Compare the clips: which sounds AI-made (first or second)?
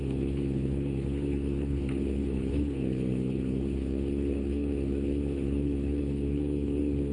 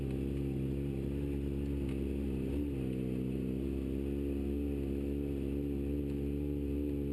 first